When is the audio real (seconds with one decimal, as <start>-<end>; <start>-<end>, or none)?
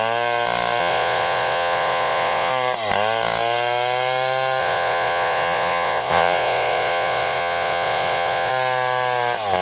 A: 0.0-0.8; 2.5-4.6; 8.5-9.6